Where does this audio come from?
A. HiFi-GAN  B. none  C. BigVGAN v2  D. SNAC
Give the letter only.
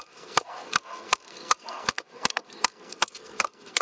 D